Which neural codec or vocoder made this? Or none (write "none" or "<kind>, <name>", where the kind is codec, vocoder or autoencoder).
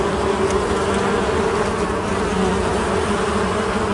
none